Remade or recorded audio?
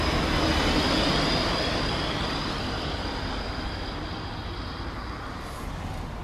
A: recorded